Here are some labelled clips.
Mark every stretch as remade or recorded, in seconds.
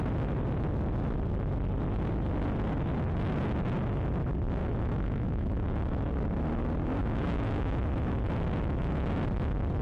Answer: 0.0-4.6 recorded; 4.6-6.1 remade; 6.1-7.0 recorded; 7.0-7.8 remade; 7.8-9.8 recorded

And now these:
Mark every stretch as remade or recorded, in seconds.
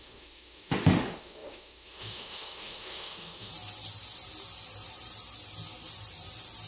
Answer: 0.0-3.5 remade; 3.5-6.7 recorded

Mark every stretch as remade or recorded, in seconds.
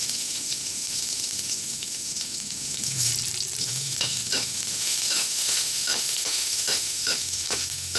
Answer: 0.0-3.1 remade; 3.1-3.6 recorded; 3.6-8.0 remade